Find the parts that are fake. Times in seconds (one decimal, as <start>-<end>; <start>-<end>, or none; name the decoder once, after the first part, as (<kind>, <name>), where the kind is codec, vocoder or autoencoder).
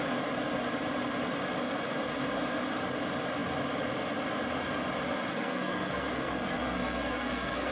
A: 5.3-7.7 (codec, SNAC)